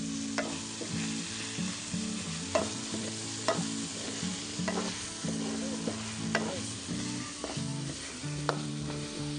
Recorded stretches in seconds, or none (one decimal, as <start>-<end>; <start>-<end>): 0.0-1.6; 3.6-7.7; 8.7-9.4